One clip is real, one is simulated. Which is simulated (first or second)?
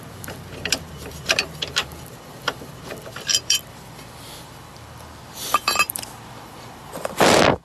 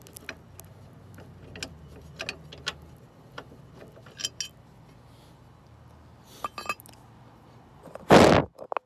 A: first